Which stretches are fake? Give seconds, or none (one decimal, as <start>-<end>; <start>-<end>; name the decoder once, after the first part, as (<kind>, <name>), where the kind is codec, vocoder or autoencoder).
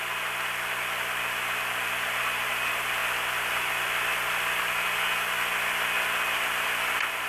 none